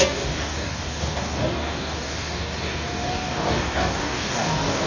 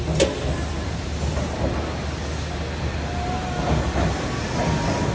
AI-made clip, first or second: first